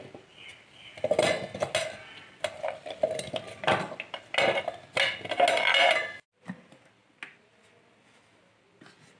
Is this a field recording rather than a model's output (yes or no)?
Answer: yes